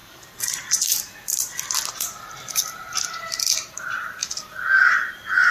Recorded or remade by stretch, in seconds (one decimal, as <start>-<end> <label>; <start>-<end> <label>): 0.0-3.3 remade; 3.3-4.2 recorded; 4.2-4.9 remade; 4.9-5.5 recorded